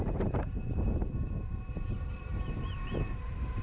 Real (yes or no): no